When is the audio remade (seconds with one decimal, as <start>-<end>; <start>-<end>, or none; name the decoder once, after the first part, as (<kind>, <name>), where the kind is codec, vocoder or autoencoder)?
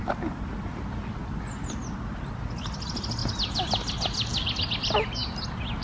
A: none